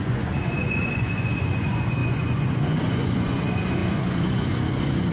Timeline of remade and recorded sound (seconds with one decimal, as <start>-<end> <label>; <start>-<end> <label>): 0.0-5.1 remade